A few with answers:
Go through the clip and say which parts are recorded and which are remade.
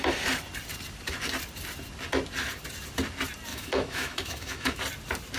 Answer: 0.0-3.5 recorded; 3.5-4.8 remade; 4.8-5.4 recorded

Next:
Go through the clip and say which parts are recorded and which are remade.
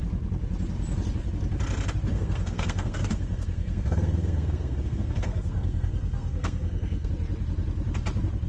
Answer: 0.0-2.1 recorded; 2.1-7.1 remade; 7.1-8.5 recorded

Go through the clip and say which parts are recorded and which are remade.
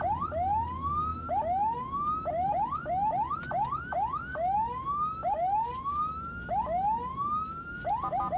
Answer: 0.0-8.4 recorded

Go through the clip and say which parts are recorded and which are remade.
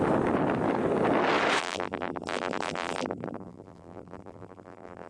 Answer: 0.0-1.6 recorded; 1.6-5.1 remade